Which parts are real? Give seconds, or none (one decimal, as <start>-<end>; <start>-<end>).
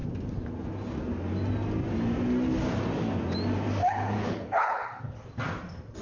0.0-3.8; 5.0-6.0